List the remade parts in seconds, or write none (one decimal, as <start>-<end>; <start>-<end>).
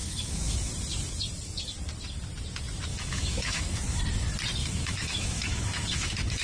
0.0-0.7; 2.9-4.0; 4.6-6.4